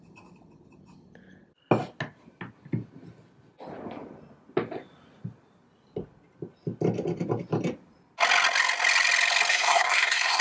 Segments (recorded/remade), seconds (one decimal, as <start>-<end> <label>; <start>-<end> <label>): 0.0-9.5 recorded; 9.5-10.4 remade